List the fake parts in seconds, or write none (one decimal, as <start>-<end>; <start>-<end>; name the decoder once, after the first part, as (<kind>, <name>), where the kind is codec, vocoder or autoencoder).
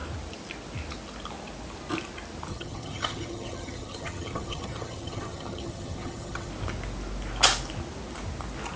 2.5-6.5 (vocoder, HiFi-GAN)